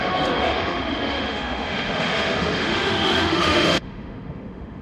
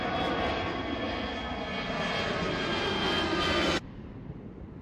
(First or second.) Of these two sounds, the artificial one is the first